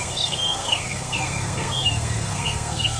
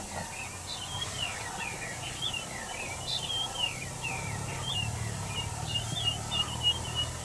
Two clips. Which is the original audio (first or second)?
second